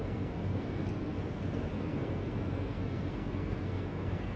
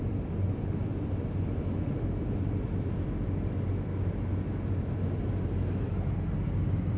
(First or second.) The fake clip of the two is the first